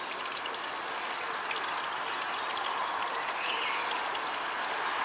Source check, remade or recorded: recorded